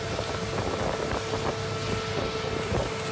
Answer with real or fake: real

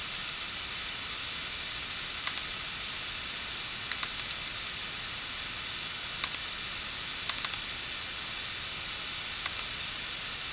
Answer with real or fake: real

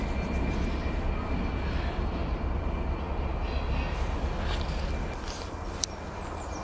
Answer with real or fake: real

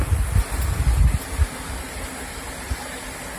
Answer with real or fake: real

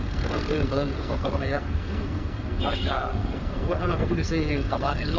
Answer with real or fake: fake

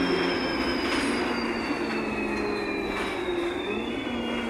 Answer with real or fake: real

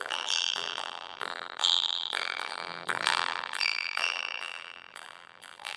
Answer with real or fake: fake